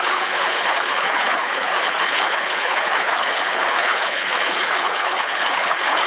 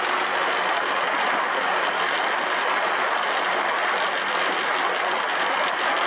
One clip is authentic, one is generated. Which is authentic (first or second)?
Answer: second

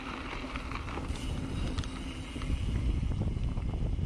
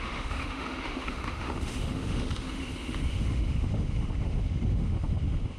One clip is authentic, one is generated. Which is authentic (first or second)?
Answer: first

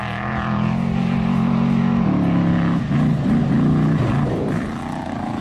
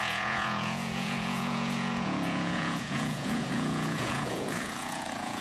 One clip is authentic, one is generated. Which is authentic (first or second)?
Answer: first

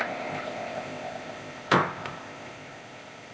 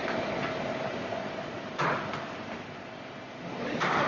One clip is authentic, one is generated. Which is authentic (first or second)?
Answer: second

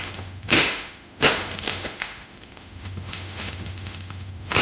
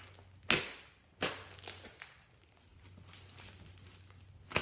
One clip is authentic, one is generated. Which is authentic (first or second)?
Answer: second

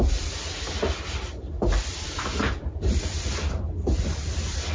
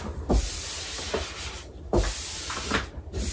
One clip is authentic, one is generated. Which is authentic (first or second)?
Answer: second